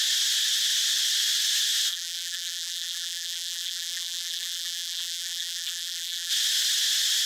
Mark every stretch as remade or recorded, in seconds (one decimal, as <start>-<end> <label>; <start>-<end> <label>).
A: 0.0-1.9 recorded; 1.9-6.3 remade; 6.3-7.3 recorded